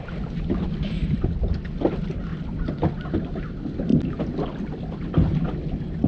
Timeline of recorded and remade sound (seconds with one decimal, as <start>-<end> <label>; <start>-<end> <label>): 0.0-6.1 recorded